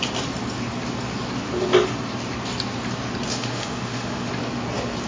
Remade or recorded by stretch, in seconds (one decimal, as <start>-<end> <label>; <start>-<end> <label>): 0.0-3.3 recorded; 3.3-4.3 remade; 4.3-5.1 recorded